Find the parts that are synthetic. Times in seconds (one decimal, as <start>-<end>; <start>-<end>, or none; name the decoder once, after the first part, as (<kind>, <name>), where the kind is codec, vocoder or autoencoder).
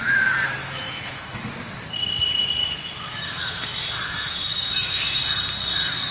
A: 0.6-1.5 (autoencoder, DAC-VAE); 2.6-5.2